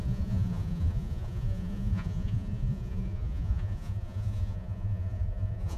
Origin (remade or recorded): remade